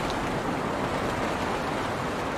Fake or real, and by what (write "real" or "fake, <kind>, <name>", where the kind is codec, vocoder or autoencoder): real